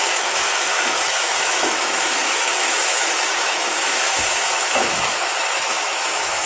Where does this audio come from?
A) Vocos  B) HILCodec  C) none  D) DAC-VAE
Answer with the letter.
D